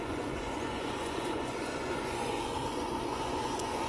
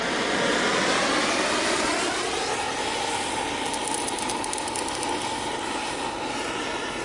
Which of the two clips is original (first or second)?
second